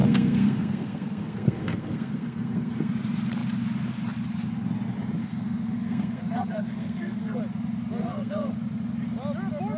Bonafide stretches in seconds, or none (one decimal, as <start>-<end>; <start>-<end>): 2.9-5.2; 7.4-8.0; 8.5-9.8